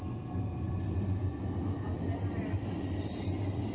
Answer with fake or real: real